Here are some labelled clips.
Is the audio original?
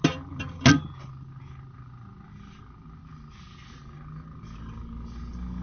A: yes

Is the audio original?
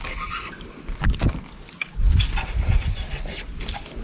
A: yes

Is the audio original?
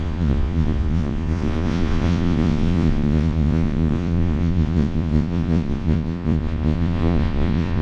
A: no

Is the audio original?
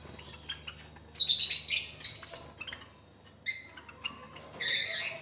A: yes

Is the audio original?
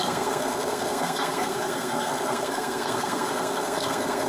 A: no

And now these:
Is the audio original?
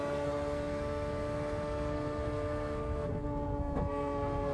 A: no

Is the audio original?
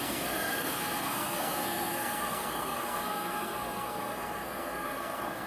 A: no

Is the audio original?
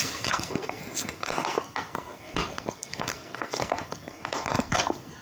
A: no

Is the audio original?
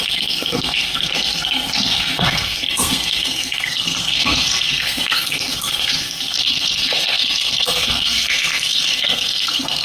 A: no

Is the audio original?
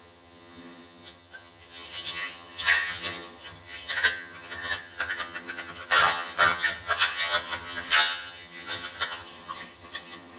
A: no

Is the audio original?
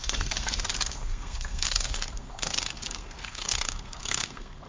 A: no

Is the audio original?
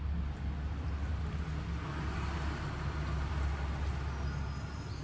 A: yes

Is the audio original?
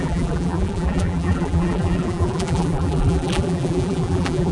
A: no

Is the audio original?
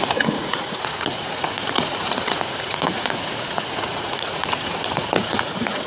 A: no